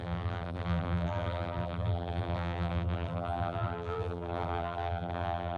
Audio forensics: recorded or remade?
remade